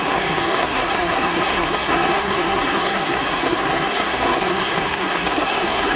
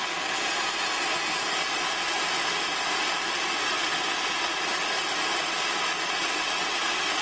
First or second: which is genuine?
second